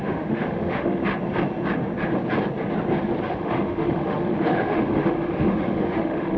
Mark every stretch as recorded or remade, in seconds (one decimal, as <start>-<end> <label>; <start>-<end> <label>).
0.0-1.0 remade; 1.0-3.3 recorded; 3.3-6.4 remade